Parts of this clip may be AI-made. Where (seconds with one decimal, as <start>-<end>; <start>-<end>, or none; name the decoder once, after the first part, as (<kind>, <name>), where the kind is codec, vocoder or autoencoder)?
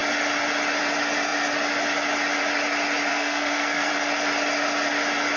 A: 3.1-3.9 (codec, SNAC)